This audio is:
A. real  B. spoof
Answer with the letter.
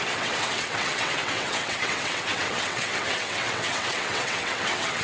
B